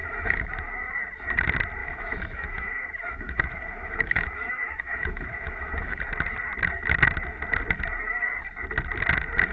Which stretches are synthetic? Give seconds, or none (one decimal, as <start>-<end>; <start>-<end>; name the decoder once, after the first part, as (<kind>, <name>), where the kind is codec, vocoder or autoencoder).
0.0-0.5 (autoencoder, DAC-VAE); 1.8-6.0